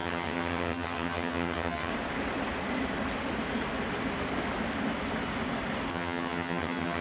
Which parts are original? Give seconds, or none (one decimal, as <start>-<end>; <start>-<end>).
1.9-5.9

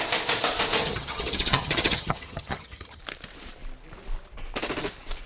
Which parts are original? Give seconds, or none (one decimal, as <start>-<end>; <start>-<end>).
0.0-0.8; 3.0-5.3

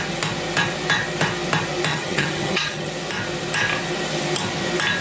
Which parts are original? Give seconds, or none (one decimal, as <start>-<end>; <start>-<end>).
0.0-1.9; 2.9-5.0

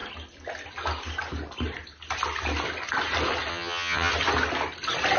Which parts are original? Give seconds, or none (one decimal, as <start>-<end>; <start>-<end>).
0.0-3.5; 4.1-5.2

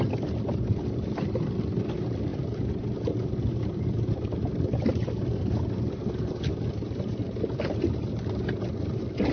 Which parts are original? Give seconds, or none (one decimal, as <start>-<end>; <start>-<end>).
0.0-9.3

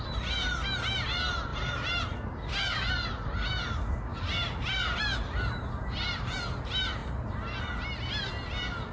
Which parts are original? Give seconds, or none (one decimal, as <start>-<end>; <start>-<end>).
0.0-8.9

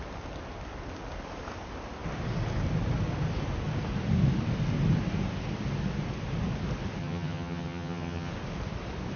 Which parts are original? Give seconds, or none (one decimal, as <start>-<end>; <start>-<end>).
0.0-7.0; 8.3-9.2